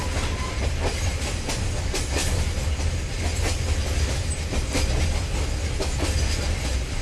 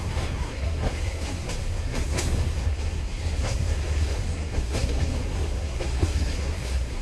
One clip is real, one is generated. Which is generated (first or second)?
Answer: second